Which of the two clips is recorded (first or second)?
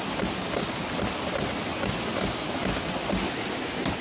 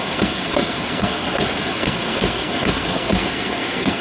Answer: first